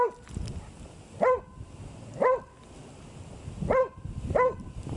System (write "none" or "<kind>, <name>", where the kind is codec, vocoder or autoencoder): none